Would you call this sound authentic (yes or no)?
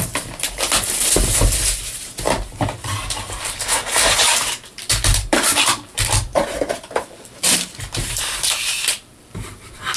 no